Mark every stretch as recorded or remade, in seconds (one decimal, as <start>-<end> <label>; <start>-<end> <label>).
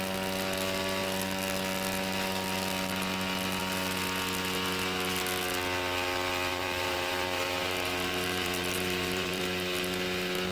0.0-6.5 recorded; 6.5-9.4 remade; 9.4-10.5 recorded